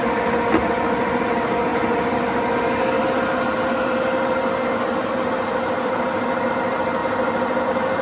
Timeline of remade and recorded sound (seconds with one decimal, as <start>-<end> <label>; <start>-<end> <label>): 0.0-7.0 remade; 7.0-7.6 recorded; 7.6-8.0 remade